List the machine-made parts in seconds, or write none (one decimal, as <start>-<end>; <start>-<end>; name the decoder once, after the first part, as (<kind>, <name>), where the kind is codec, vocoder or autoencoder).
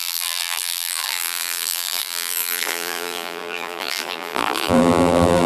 0.0-5.5 (vocoder, BigVGAN v2)